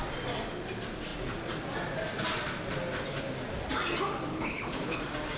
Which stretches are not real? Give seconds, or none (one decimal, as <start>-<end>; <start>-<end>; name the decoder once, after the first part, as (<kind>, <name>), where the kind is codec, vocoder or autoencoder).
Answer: 4.3-5.0 (codec, HILCodec)